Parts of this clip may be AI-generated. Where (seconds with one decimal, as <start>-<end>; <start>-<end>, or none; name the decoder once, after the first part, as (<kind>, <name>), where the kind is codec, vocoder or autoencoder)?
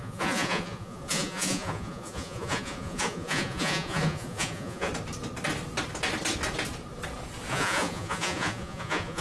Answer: 0.0-4.9 (vocoder, Vocos); 7.5-9.2